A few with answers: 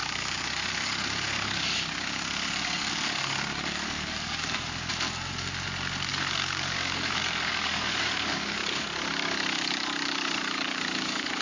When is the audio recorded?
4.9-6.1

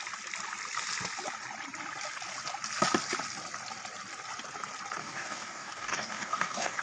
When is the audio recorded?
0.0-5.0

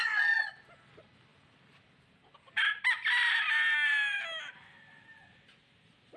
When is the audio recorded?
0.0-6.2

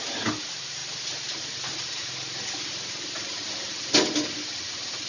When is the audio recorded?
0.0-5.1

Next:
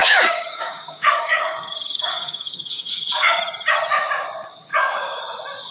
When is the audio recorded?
3.4-4.7; 5.2-5.7